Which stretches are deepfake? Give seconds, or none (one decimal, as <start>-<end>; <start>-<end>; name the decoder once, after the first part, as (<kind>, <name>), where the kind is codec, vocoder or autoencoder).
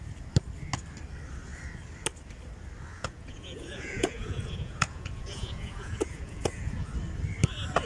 2.9-6.9 (vocoder, Vocos)